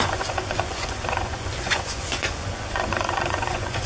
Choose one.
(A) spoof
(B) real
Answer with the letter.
A